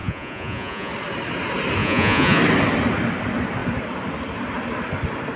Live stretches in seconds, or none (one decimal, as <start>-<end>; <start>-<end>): 0.9-1.8; 2.4-5.4